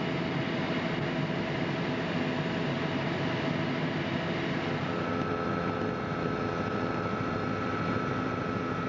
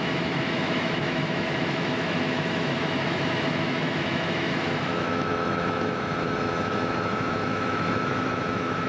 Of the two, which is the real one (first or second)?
first